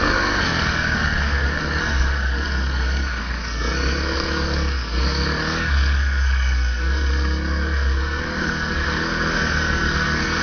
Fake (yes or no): yes